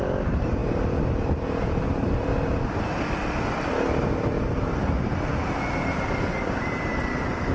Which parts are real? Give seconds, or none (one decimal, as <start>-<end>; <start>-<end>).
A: 0.0-7.5

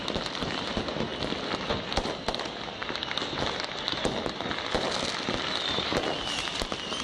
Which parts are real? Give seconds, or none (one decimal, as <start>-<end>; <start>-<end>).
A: 0.0-7.0

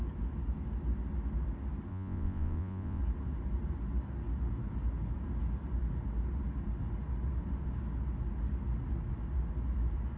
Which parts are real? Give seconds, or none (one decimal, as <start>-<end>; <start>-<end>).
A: 0.0-1.9; 3.0-10.2

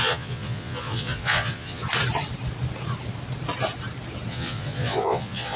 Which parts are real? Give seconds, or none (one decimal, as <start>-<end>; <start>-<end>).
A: 1.8-4.3

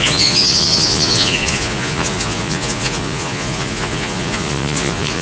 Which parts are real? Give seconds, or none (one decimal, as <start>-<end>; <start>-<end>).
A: none

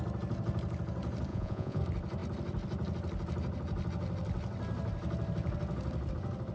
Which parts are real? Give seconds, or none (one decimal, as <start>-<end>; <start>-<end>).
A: 0.0-1.3; 1.8-6.5